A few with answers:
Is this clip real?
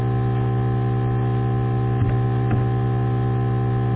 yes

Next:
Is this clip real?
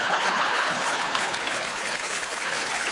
no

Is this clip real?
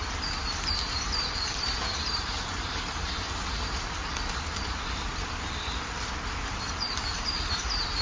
no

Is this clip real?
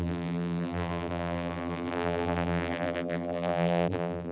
no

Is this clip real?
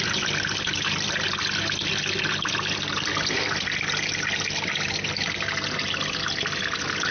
yes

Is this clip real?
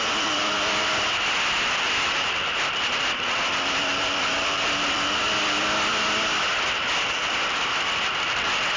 no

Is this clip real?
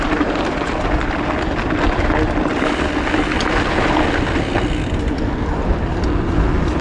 yes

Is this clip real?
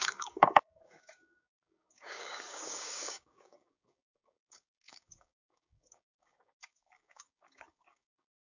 no